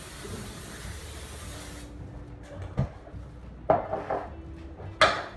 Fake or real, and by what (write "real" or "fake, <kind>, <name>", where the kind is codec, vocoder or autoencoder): real